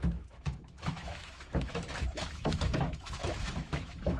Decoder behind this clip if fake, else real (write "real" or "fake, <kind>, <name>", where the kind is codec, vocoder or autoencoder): fake, autoencoder, DAC-VAE